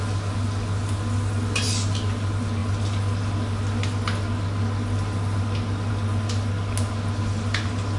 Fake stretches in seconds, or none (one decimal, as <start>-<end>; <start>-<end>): none